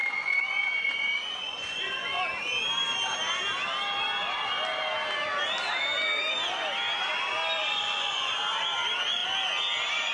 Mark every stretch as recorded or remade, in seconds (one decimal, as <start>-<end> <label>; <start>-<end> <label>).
0.0-2.2 remade; 2.2-7.6 recorded; 7.6-8.3 remade; 8.3-10.1 recorded